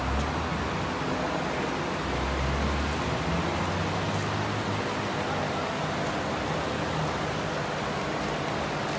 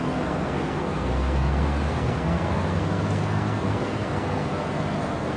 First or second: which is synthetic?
second